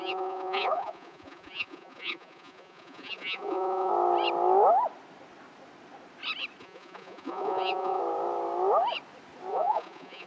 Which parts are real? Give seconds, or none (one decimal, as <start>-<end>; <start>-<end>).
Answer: 3.9-6.6; 8.0-9.5